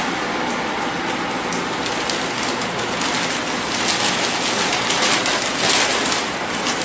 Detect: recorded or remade recorded